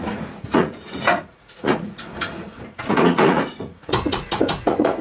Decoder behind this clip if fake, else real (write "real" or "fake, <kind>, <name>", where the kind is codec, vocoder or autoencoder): fake, vocoder, Vocos